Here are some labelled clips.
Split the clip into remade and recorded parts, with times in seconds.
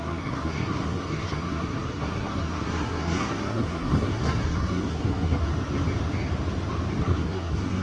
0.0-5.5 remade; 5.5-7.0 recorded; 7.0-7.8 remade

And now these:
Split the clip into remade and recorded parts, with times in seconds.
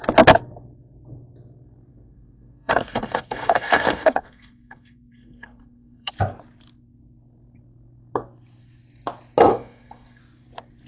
0.0-1.9 recorded; 1.9-6.1 remade; 6.1-9.5 recorded; 9.5-10.2 remade; 10.2-10.9 recorded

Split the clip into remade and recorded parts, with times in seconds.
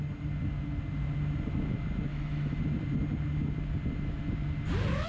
0.0-2.1 recorded; 2.1-2.6 remade; 2.6-5.1 recorded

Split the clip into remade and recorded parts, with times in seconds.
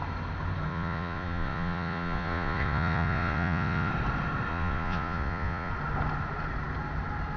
0.0-0.7 recorded; 0.7-3.9 remade; 3.9-4.5 recorded; 4.5-5.7 remade; 5.7-7.4 recorded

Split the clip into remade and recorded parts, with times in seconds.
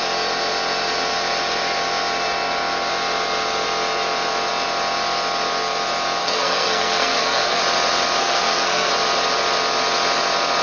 0.0-6.2 recorded; 6.2-7.6 remade; 7.6-8.2 recorded; 8.2-8.9 remade; 8.9-10.6 recorded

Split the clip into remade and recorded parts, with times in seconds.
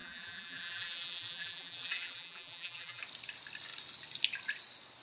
0.0-3.0 remade; 3.0-5.0 recorded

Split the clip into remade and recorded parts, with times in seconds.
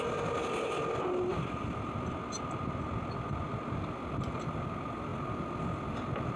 0.0-6.4 recorded